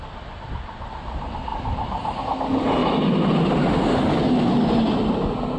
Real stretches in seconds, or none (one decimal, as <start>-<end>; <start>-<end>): 0.0-5.6